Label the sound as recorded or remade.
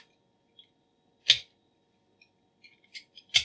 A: recorded